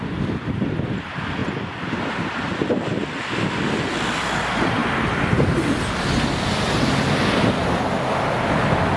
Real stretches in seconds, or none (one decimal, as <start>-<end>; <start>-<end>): 0.0-9.0

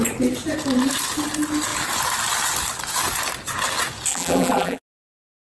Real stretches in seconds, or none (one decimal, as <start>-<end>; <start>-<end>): 0.0-4.1; 4.8-5.5

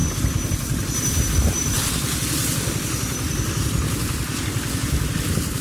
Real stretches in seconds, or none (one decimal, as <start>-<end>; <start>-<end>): 0.0-1.6; 5.0-5.6

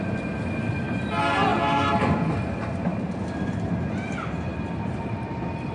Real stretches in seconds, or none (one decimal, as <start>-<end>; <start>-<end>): 2.9-3.7

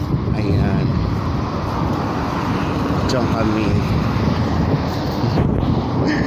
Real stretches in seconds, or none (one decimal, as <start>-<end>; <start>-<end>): 0.0-6.3